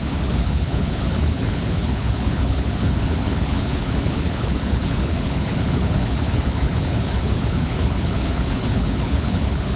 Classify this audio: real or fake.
fake